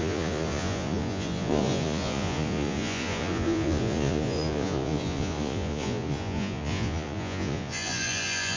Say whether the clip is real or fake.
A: fake